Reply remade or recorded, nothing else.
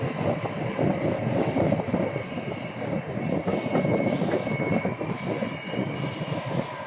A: recorded